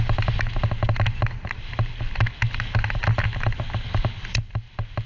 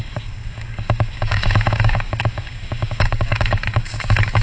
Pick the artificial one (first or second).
second